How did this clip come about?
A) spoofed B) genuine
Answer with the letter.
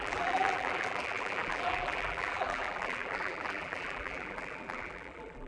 A